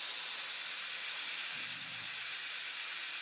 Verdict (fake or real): real